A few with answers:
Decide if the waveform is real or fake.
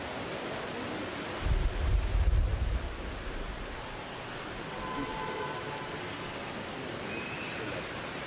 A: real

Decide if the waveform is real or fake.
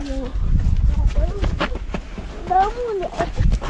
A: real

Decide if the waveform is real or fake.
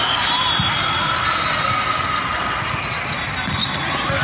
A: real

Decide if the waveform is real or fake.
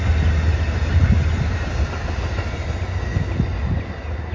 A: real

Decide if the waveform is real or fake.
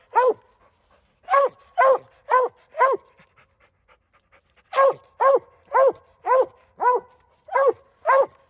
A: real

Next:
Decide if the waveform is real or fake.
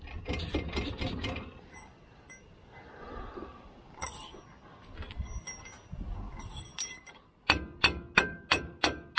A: real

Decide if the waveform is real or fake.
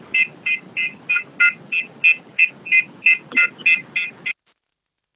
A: real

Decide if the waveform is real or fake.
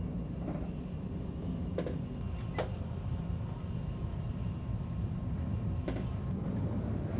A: real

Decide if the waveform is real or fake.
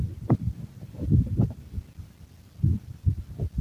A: real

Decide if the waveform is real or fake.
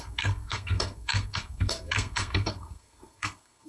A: fake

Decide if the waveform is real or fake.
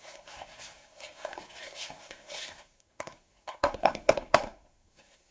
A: fake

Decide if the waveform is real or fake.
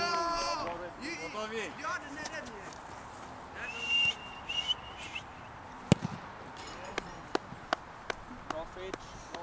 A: real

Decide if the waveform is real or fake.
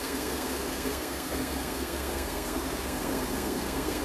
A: fake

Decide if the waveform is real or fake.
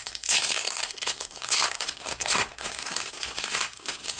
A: fake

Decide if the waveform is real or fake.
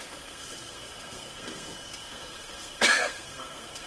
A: fake